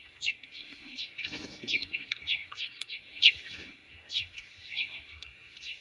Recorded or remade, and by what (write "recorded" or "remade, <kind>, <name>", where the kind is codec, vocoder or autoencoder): remade, codec, SNAC